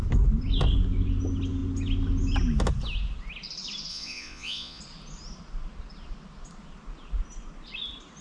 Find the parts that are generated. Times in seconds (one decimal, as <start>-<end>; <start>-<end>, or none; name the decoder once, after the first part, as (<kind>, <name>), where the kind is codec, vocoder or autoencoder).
3.9-4.8 (vocoder, Vocos)